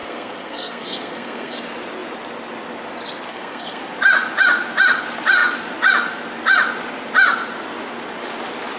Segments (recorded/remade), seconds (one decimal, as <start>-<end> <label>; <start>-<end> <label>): 0.0-1.6 remade; 1.6-3.3 recorded; 3.3-3.8 remade; 3.8-8.8 recorded